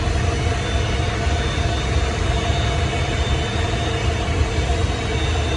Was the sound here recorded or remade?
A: recorded